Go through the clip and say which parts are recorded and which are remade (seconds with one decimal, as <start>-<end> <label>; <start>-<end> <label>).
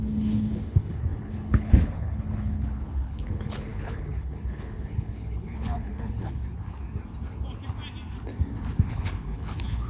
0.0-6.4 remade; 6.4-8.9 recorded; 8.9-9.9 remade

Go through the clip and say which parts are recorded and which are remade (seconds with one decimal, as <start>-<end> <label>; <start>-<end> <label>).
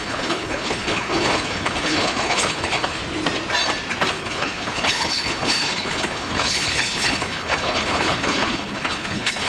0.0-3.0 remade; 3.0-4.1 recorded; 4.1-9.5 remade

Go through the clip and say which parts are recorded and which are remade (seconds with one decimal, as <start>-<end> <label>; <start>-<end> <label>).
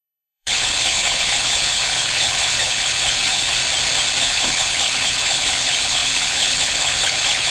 0.0-3.6 remade; 3.6-4.2 recorded; 4.2-7.5 remade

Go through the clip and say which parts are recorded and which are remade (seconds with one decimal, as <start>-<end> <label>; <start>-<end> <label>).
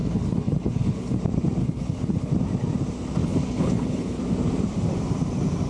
0.0-1.2 remade; 1.2-1.6 recorded; 1.6-2.3 remade; 2.3-3.2 recorded; 3.2-4.2 remade; 4.2-5.7 recorded